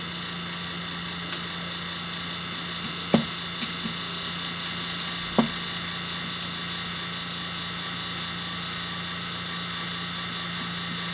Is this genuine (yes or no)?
yes